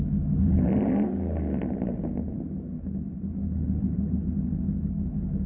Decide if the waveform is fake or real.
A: real